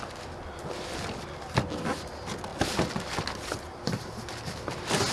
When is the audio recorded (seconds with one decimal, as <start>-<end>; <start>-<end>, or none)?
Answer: 0.0-5.1